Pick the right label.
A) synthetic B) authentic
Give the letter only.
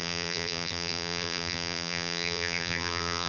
A